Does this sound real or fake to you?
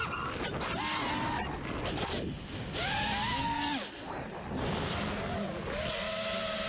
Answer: real